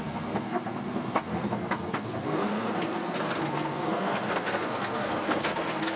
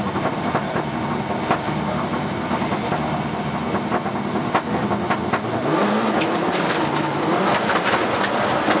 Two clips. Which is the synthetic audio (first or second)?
first